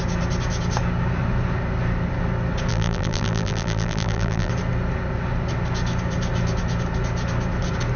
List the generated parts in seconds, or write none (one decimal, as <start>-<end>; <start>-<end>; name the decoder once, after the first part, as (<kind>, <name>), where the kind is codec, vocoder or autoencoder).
2.7-4.5 (vocoder, BigVGAN v2)